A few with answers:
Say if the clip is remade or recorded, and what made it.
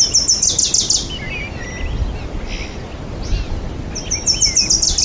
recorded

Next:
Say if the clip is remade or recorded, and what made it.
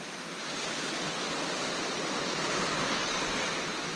recorded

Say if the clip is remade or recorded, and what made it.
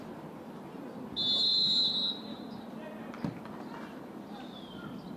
recorded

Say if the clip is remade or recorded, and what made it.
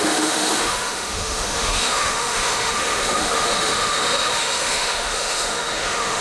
remade, autoencoder, DAC-VAE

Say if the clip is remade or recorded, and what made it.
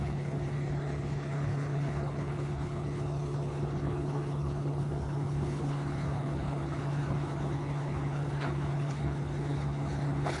remade, codec, HILCodec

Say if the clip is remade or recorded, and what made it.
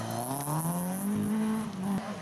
recorded